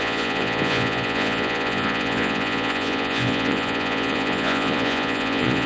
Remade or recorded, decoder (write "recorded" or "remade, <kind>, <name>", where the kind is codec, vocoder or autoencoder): remade, vocoder, Vocos